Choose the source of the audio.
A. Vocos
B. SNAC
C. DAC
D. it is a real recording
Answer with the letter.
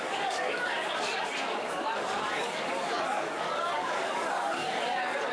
C